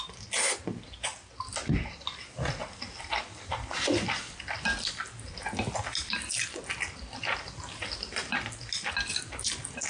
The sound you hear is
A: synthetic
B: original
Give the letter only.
B